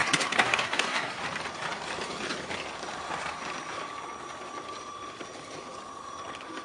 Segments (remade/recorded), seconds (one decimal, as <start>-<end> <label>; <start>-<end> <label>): 0.0-1.2 remade; 1.2-6.6 recorded